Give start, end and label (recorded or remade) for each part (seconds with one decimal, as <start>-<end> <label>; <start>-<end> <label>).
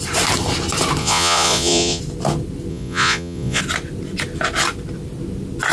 0.0-1.0 recorded; 1.0-2.0 remade; 2.0-2.7 recorded; 2.7-3.6 remade; 3.6-5.7 recorded